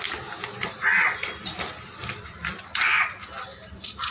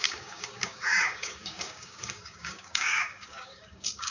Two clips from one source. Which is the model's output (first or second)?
second